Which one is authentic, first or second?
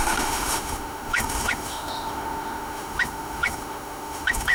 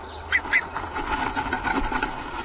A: second